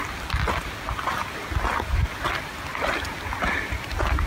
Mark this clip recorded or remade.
recorded